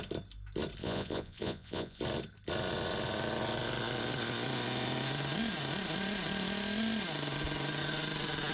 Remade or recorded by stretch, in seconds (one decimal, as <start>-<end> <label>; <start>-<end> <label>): 0.0-0.8 recorded; 0.8-2.0 remade; 2.0-8.5 recorded